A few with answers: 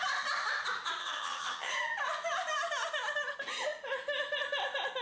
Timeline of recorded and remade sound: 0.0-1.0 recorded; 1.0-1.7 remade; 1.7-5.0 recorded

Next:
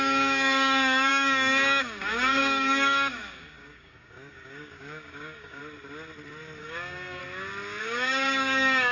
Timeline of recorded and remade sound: 0.0-5.6 remade; 5.6-6.6 recorded; 6.6-7.2 remade; 7.2-7.8 recorded; 7.8-8.9 remade

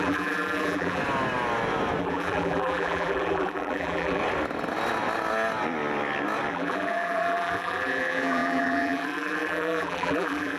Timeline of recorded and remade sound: 0.0-1.0 remade; 1.0-2.0 recorded; 2.0-4.2 remade; 4.2-6.5 recorded; 6.5-10.6 remade

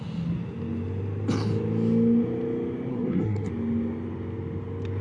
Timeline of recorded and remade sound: 0.0-2.9 recorded; 2.9-3.5 remade; 3.5-5.0 recorded

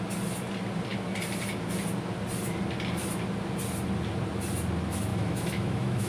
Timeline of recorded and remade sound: 0.0-5.1 recorded; 5.1-6.1 remade

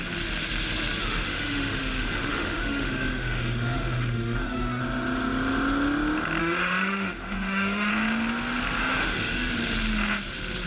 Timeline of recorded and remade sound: 0.0-1.0 recorded; 1.0-4.8 remade; 4.8-6.4 recorded; 6.4-7.9 remade; 7.9-8.8 recorded; 8.8-9.5 remade; 9.5-10.7 recorded

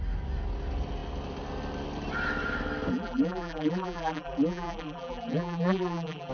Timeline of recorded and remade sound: 0.0-2.9 recorded; 2.9-6.3 remade

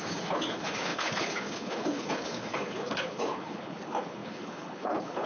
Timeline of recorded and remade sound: 0.0-5.3 remade